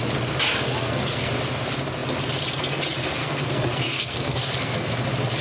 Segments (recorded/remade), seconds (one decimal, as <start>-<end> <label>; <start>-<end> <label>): 0.0-0.8 recorded; 0.8-1.3 remade; 1.3-3.2 recorded; 3.2-4.9 remade; 4.9-5.4 recorded